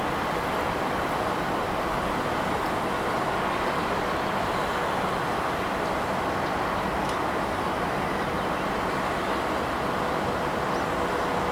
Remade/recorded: recorded